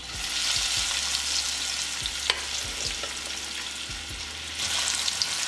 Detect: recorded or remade recorded